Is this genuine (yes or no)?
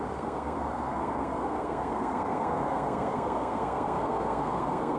no